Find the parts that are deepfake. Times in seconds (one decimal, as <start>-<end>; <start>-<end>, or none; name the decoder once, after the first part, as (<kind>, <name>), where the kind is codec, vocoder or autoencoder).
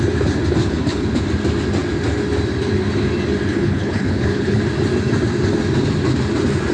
0.6-1.1 (codec, HILCodec); 3.5-4.6